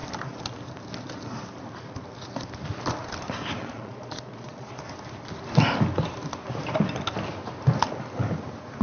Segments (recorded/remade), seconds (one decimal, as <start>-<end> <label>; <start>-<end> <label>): 0.0-3.6 recorded; 3.6-4.8 remade; 4.8-8.8 recorded